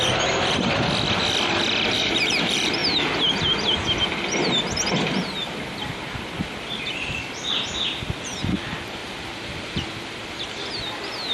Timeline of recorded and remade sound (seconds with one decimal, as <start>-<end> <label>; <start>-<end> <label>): 0.0-2.8 remade; 2.8-5.1 recorded; 5.1-11.3 remade